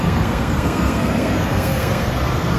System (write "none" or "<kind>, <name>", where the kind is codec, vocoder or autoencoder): codec, SNAC